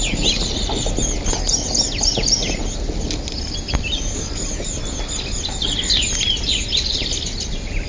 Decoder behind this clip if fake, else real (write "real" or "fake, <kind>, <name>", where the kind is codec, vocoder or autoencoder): real